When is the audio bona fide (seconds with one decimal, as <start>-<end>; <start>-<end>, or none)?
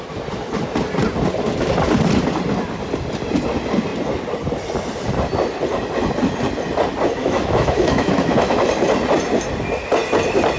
0.0-7.2; 8.6-10.6